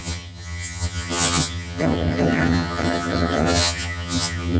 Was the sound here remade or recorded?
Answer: remade